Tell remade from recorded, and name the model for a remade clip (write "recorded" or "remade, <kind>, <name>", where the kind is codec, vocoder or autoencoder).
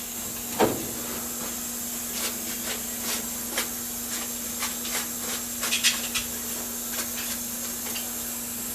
recorded